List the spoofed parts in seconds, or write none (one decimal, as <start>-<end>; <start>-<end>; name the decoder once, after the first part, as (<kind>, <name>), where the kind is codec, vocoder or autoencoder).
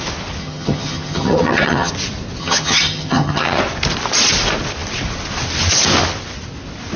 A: 0.4-1.9 (vocoder, HiFi-GAN); 2.4-3.6